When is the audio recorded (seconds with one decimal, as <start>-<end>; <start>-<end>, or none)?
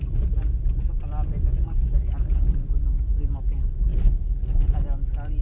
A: 0.0-5.4